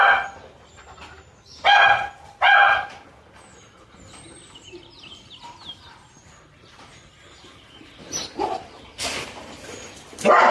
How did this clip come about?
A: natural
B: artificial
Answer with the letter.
B